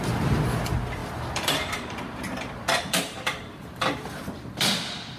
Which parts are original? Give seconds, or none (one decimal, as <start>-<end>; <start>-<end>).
0.0-1.0; 4.1-5.2